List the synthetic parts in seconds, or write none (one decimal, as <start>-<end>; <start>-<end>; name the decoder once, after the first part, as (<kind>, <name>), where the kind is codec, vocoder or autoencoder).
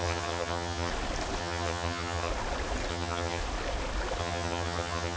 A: 0.0-0.9 (vocoder, HiFi-GAN); 1.4-2.3; 2.9-3.4; 4.2-5.2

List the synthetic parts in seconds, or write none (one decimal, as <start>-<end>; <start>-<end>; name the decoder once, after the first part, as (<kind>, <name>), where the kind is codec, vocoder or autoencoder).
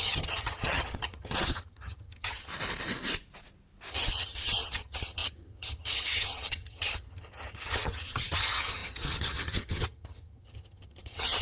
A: 0.0-2.5 (vocoder, HiFi-GAN); 3.9-11.4